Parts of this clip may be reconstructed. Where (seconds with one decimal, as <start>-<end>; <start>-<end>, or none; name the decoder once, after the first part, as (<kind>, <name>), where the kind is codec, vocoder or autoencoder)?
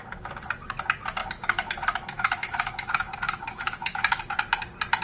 1.2-4.2 (autoencoder, DAC-VAE)